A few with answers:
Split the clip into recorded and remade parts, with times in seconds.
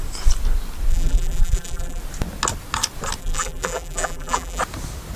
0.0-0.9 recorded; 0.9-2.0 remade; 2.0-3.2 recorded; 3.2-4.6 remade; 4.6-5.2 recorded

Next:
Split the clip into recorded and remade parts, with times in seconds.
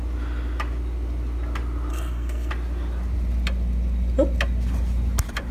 0.0-1.9 recorded; 1.9-2.5 remade; 2.5-5.5 recorded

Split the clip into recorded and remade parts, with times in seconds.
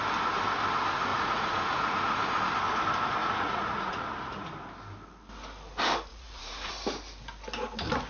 0.0-1.1 recorded; 1.1-2.4 remade; 2.4-3.2 recorded; 3.2-4.5 remade; 4.5-6.1 recorded; 6.1-6.7 remade; 6.7-8.1 recorded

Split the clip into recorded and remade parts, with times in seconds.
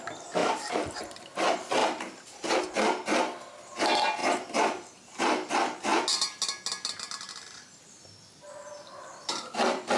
0.0-0.4 recorded; 0.4-1.0 remade; 1.0-1.8 recorded; 1.8-2.6 remade; 2.6-4.2 recorded; 4.2-5.5 remade; 5.5-10.0 recorded